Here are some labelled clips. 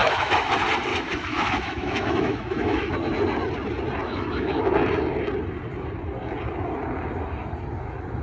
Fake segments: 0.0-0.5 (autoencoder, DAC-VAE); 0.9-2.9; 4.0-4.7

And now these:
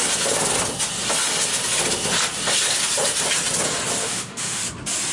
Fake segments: 4.0-4.6 (autoencoder, DAC-VAE)

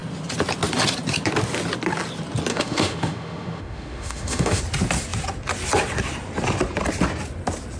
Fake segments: 2.5-4.6 (autoencoder, DAC-VAE)

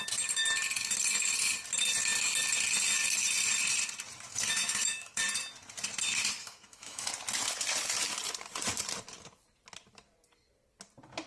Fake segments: 4.3-5.2 (autoencoder, DAC-VAE); 6.4-7.1

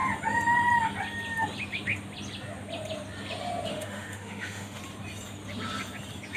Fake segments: 3.7-4.8 (autoencoder, DAC-VAE)